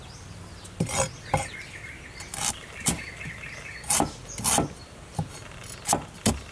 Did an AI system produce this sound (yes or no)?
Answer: no